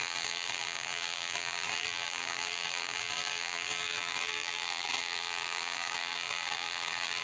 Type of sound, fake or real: fake